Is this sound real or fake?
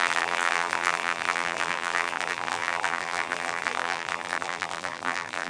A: fake